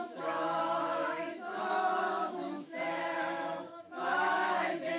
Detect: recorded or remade remade